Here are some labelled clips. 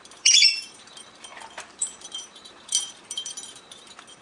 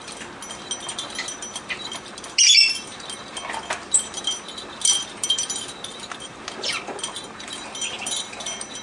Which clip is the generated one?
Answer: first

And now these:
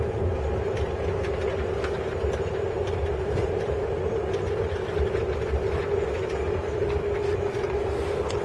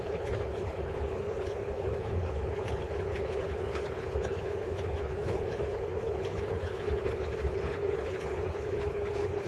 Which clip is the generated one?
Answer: second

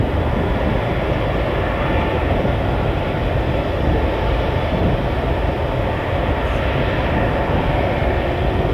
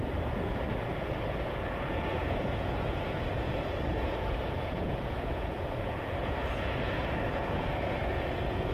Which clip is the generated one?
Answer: second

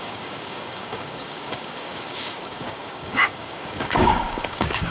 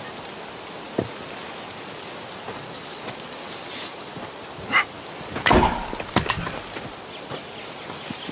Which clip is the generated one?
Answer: first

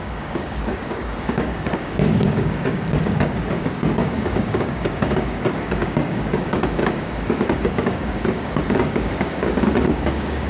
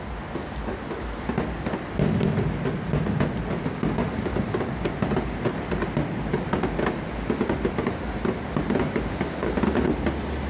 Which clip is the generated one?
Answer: first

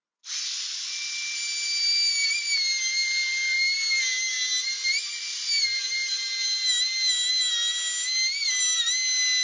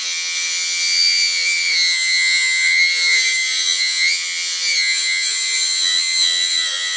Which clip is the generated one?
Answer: second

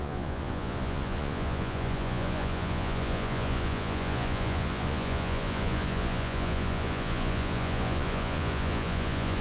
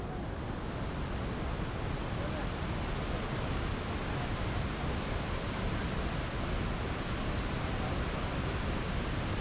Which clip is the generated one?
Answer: first